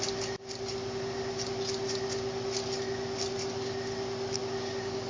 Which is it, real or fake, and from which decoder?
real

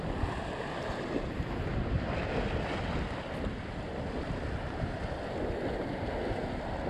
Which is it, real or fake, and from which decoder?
real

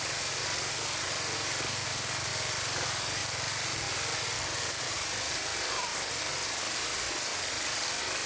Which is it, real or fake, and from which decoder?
real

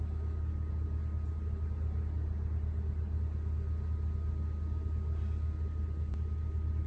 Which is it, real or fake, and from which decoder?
real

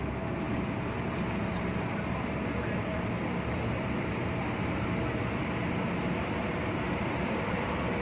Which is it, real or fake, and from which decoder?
real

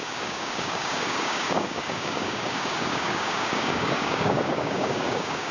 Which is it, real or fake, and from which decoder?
fake, codec, DAC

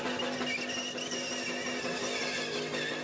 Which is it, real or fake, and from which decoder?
real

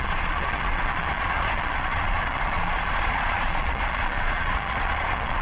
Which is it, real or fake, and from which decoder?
fake, vocoder, Vocos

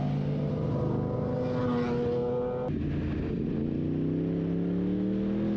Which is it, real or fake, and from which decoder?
real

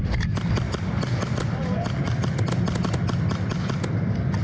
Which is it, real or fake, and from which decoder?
real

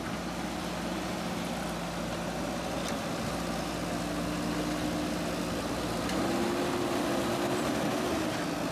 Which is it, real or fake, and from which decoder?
real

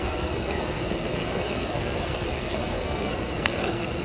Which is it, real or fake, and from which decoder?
fake, codec, SNAC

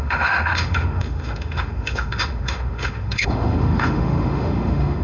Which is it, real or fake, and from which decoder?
fake, autoencoder, DAC-VAE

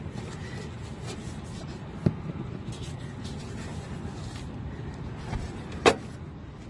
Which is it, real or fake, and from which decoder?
real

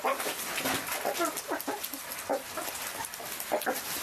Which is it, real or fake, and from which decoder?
real